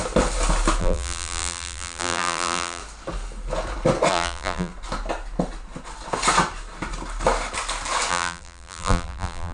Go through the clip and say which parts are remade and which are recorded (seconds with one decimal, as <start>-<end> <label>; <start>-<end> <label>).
0.0-0.8 recorded; 0.8-2.8 remade; 2.8-4.1 recorded; 4.1-4.7 remade; 4.7-8.1 recorded; 8.1-9.5 remade